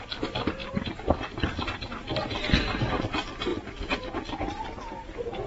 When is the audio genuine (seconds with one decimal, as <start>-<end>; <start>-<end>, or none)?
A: 0.0-5.5